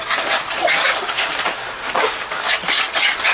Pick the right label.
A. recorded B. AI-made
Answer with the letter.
A